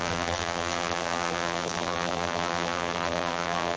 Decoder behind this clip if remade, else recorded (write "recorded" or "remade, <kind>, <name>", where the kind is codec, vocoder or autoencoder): remade, vocoder, BigVGAN v2